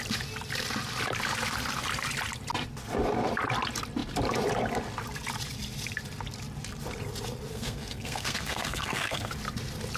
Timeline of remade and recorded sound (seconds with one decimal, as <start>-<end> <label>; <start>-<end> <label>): 0.0-7.5 recorded; 7.5-9.3 remade; 9.3-10.0 recorded